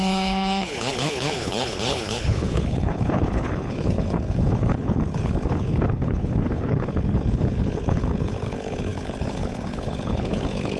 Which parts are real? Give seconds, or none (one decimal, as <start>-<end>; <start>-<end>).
none